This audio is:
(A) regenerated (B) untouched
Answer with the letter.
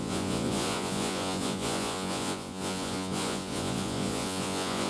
A